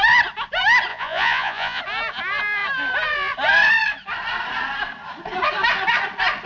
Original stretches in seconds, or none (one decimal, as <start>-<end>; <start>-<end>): 0.0-0.9; 1.8-6.5